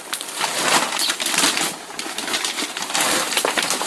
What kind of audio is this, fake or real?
real